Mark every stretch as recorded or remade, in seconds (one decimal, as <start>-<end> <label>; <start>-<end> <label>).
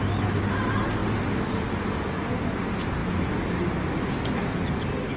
0.0-5.2 recorded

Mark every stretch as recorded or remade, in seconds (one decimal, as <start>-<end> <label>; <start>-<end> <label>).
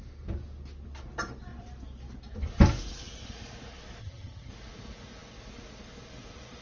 0.0-4.0 recorded; 4.0-4.5 remade; 4.5-6.6 recorded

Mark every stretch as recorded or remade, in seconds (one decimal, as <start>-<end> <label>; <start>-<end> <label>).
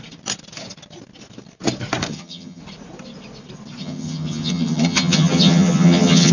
0.0-2.1 recorded; 2.1-2.6 remade; 2.6-3.8 recorded; 3.8-6.3 remade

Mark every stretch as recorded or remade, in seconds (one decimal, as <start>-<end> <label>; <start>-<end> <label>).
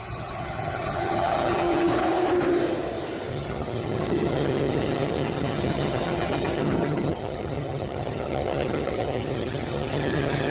0.0-1.9 remade; 1.9-3.3 recorded; 3.3-10.5 remade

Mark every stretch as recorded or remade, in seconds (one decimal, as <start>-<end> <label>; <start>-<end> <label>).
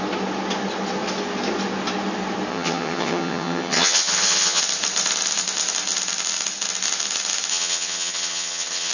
0.0-2.5 recorded; 2.5-4.6 remade; 4.6-7.5 recorded; 7.5-8.9 remade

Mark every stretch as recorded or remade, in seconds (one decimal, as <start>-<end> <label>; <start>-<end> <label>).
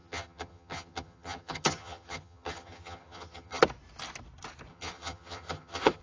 0.0-3.6 remade; 3.6-4.7 recorded; 4.7-6.0 remade